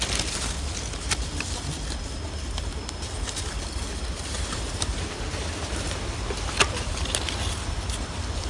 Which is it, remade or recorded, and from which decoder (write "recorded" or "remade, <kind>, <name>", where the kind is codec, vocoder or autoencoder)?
recorded